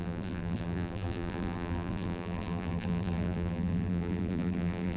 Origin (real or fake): fake